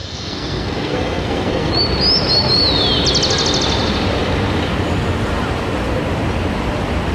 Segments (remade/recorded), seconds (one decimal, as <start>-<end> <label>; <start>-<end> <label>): 0.0-1.7 remade; 1.7-7.1 recorded